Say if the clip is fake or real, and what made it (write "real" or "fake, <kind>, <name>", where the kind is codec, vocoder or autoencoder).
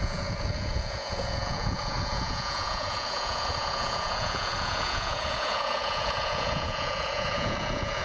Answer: fake, vocoder, Vocos